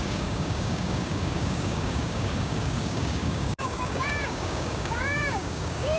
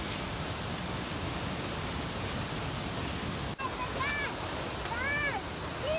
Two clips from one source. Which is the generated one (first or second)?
first